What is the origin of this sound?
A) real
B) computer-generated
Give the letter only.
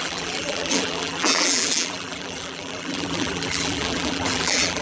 B